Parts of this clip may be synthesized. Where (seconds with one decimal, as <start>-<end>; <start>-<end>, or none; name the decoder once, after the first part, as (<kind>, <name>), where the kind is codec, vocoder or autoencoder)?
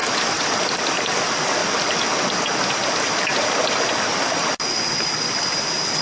none